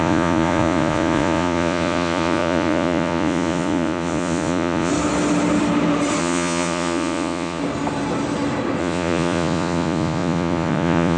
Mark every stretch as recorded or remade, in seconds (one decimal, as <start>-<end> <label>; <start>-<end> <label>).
0.0-4.9 remade; 4.9-6.2 recorded; 6.2-7.6 remade; 7.6-8.8 recorded; 8.8-11.2 remade